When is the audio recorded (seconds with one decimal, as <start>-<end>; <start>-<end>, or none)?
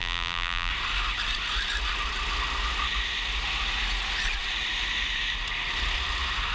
0.7-6.5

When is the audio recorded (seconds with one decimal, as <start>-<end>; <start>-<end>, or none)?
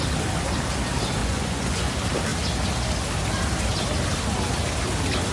0.0-1.2; 1.9-5.3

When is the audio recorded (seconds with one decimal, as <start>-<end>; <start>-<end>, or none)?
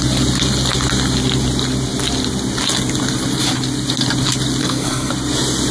0.0-4.6; 5.1-5.7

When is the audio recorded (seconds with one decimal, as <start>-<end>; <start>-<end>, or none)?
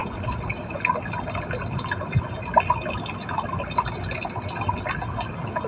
0.8-5.7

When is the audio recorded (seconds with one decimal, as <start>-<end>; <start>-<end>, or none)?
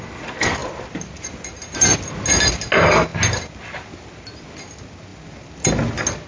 0.0-6.3